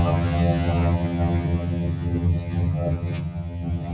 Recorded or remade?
remade